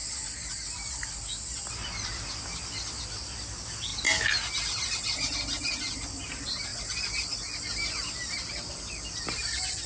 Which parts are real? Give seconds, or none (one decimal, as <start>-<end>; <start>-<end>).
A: 0.0-9.9